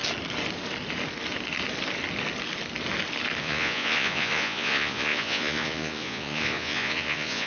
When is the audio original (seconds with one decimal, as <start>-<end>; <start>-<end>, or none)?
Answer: 0.0-3.4